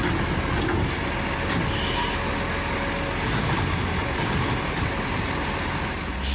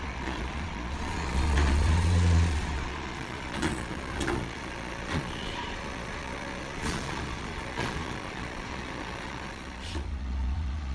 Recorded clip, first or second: first